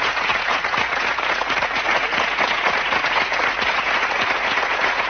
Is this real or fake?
fake